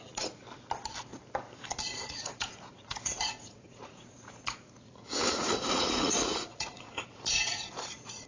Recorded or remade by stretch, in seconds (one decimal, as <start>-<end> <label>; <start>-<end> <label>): 0.0-0.4 remade; 0.4-1.9 recorded; 1.9-8.3 remade